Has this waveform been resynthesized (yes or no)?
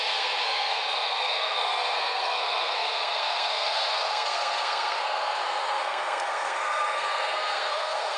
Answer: yes